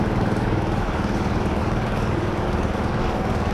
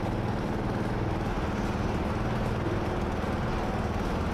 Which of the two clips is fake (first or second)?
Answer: first